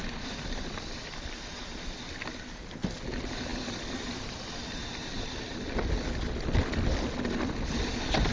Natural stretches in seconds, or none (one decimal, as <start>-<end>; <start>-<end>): 0.0-8.3